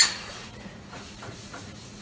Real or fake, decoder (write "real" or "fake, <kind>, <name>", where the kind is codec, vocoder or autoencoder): fake, vocoder, Vocos